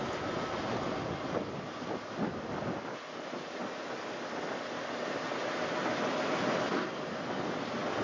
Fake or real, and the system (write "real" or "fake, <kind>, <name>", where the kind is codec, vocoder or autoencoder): real